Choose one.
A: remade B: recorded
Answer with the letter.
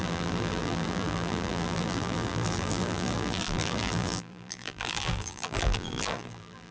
A